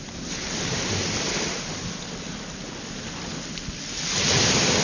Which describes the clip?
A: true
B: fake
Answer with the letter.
A